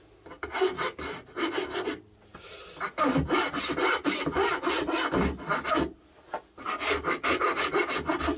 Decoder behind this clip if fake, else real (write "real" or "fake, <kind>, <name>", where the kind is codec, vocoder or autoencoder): real